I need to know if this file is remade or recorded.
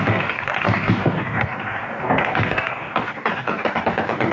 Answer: remade